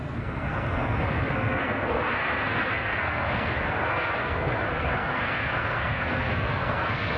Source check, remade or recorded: remade